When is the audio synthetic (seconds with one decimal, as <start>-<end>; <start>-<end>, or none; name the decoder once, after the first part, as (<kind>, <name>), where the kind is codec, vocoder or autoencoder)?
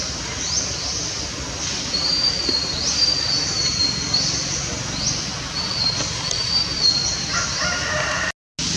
none